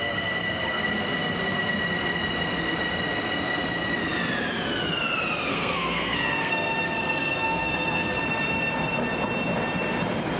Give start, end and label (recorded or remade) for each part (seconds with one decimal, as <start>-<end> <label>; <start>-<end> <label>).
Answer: 0.0-5.5 recorded; 5.5-8.2 remade; 8.2-10.4 recorded